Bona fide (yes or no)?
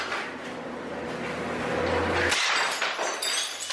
yes